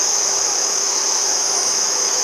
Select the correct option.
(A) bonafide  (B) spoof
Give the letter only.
B